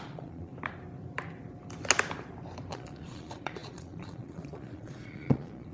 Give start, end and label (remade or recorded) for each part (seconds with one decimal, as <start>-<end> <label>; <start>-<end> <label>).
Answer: 0.0-0.5 remade; 0.5-2.7 recorded; 2.7-5.7 remade